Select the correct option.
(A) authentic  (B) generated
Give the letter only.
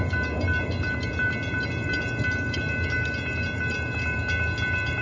A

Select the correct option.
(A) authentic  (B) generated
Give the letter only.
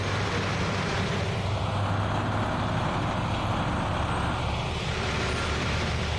A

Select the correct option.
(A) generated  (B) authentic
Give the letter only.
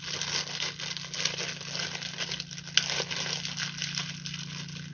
B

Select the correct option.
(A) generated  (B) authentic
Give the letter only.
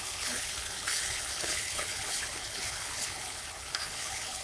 A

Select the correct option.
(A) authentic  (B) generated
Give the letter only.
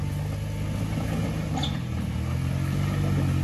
A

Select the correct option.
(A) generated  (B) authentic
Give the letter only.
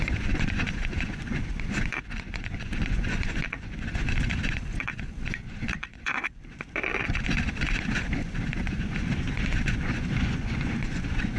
A